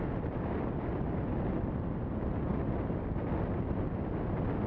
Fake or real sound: real